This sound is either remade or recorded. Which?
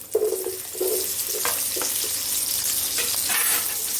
recorded